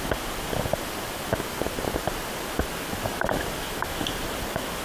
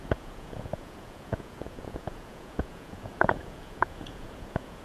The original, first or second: first